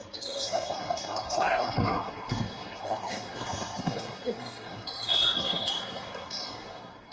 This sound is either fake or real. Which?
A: fake